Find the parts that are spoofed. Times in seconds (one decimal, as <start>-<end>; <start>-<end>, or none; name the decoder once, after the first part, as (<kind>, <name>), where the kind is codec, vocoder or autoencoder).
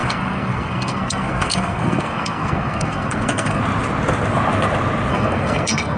0.0-3.6 (codec, SNAC); 5.1-6.0